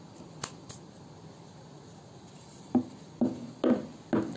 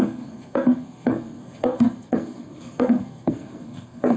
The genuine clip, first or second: first